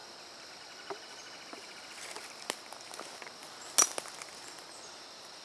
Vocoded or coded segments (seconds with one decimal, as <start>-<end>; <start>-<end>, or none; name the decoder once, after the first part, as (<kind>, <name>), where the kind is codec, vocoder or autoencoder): none